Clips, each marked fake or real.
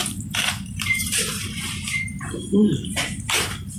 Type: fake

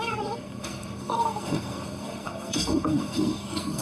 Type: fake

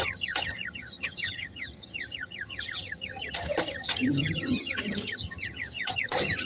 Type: fake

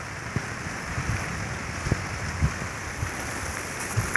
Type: real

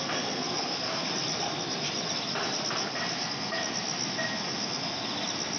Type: real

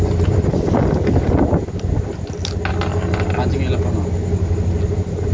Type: real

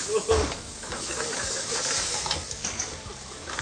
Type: fake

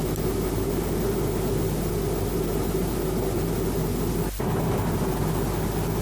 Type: real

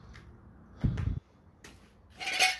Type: real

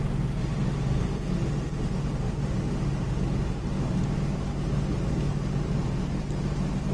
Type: real